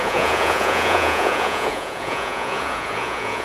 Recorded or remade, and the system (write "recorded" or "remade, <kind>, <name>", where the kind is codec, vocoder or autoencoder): remade, vocoder, Vocos